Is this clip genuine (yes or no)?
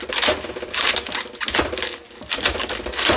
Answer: yes